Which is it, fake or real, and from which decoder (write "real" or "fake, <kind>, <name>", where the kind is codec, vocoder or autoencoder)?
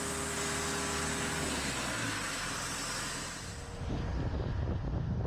real